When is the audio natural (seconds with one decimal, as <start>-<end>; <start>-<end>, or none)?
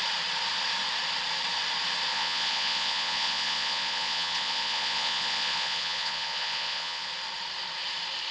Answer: 0.0-2.1; 7.1-8.3